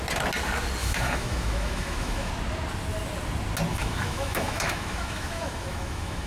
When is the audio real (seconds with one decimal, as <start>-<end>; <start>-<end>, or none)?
0.0-0.8; 2.3-3.7